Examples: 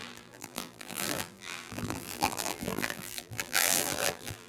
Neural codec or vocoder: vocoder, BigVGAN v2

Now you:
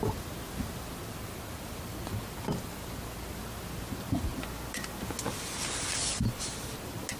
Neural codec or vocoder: none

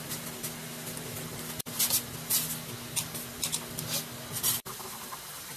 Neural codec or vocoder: none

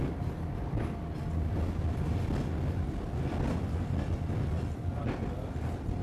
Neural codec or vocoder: none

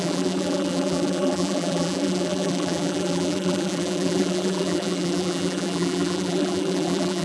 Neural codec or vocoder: vocoder, BigVGAN v2